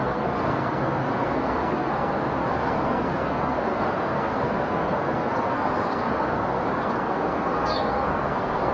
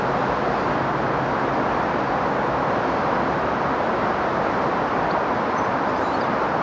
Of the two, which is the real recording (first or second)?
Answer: second